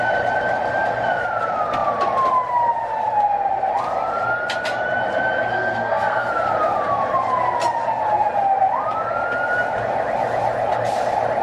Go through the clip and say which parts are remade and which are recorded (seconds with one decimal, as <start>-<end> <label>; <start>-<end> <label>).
0.0-5.5 recorded; 5.5-6.3 remade; 6.3-11.4 recorded